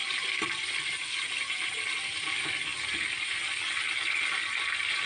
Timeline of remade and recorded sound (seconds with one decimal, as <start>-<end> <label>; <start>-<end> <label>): 0.0-1.7 remade; 1.7-5.1 recorded